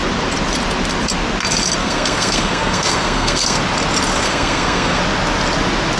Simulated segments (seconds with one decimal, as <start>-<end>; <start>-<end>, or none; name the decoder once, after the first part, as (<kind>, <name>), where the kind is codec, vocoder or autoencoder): 1.8-3.6 (codec, SNAC); 4.2-5.0

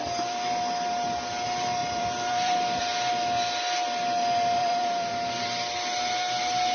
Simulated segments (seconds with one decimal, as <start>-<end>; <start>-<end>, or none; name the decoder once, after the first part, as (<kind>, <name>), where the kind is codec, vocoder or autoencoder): 1.8-2.8 (vocoder, BigVGAN v2); 4.6-5.1

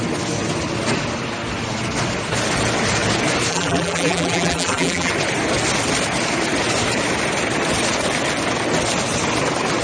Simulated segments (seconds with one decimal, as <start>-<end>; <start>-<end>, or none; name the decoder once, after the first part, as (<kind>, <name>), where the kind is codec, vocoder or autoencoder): 3.5-5.1 (vocoder, BigVGAN v2)

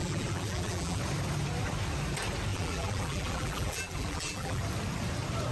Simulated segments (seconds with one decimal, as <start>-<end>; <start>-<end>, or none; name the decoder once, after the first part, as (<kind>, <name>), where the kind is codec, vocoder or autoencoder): 0.0-1.0 (vocoder, BigVGAN v2); 2.5-4.6